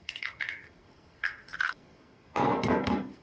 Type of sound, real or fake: fake